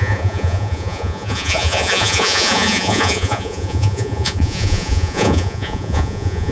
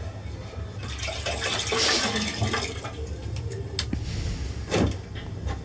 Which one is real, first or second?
second